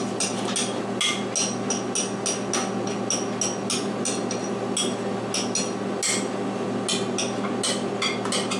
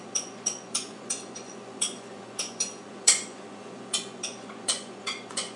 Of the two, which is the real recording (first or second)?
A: first